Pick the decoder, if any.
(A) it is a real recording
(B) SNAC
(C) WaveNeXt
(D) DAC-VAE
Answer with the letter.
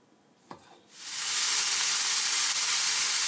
A